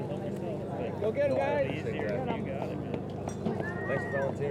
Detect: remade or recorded recorded